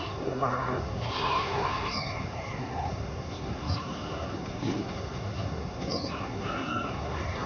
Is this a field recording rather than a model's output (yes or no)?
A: no